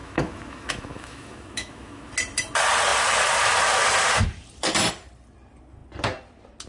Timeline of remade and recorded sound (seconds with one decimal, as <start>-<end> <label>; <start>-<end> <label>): 0.0-2.1 remade; 2.1-6.7 recorded